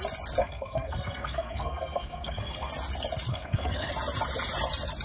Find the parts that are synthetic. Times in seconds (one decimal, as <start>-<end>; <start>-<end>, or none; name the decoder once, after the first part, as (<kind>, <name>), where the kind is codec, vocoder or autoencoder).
0.4-2.7 (codec, SNAC); 3.3-3.9